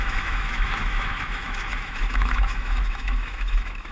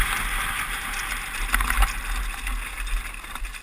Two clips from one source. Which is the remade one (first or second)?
first